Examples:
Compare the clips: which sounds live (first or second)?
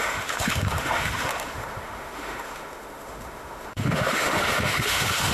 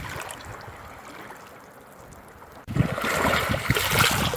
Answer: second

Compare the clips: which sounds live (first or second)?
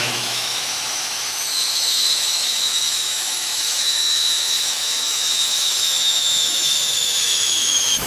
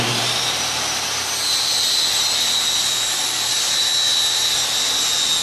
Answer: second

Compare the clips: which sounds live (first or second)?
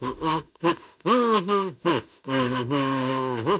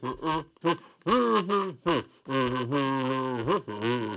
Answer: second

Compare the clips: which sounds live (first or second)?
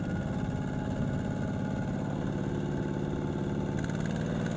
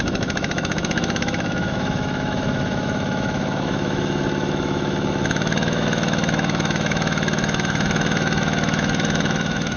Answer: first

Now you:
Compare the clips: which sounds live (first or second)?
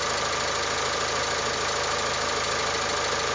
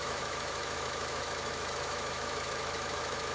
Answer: first